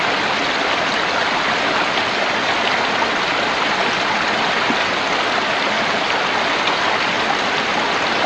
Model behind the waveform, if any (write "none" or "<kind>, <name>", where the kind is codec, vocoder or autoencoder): none